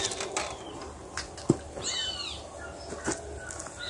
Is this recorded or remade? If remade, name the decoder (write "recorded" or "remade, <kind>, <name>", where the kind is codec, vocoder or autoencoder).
recorded